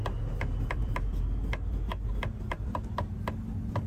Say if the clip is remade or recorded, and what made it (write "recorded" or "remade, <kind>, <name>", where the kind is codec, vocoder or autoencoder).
recorded